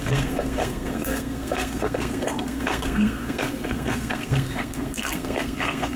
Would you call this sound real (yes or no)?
no